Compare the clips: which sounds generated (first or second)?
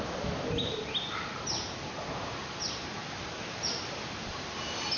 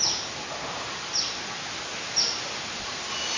first